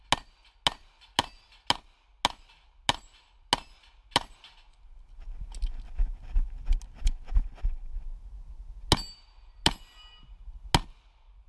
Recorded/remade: recorded